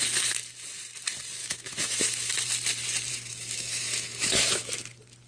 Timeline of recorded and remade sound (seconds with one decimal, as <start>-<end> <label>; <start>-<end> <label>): 0.0-1.4 recorded; 1.4-2.3 remade; 2.3-3.1 recorded; 3.1-4.7 remade; 4.7-5.3 recorded